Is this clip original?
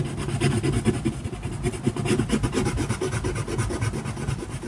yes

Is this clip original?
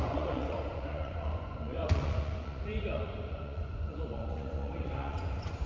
no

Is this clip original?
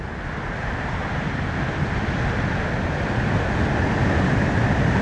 yes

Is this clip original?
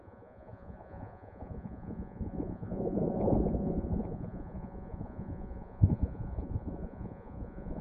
no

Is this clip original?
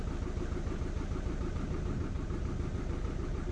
yes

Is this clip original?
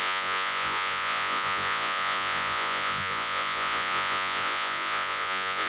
no